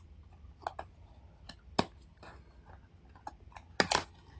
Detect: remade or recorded recorded